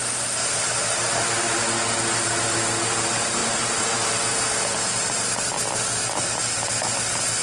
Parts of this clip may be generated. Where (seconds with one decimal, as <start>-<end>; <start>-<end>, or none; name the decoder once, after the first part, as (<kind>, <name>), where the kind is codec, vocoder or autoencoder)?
0.4-1.6 (vocoder, BigVGAN v2)